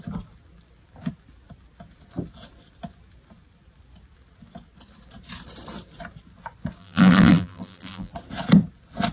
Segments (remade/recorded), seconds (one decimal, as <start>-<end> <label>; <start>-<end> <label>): 0.0-6.8 recorded; 6.8-8.1 remade; 8.1-9.1 recorded